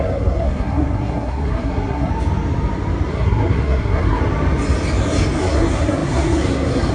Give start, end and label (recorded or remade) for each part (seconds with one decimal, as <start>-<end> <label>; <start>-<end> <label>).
0.0-2.1 remade; 2.1-3.1 recorded; 3.1-4.2 remade; 4.2-5.4 recorded; 5.4-6.9 remade